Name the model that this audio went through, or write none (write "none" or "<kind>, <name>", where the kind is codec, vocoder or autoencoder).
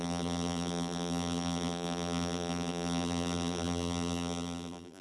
vocoder, BigVGAN v2